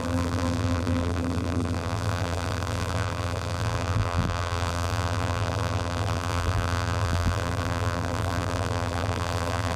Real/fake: fake